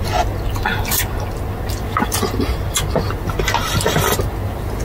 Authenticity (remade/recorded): recorded